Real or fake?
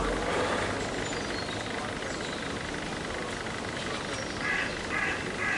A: real